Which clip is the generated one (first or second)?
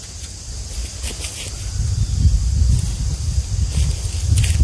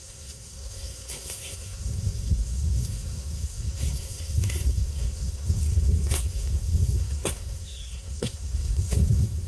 second